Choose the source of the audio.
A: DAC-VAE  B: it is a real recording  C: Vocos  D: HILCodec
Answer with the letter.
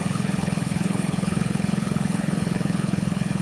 D